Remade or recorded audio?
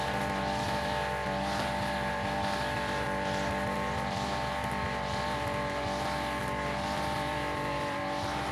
recorded